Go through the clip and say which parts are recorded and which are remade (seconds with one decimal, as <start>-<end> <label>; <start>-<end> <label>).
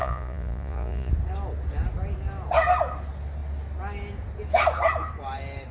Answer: 0.0-1.1 remade; 1.1-5.7 recorded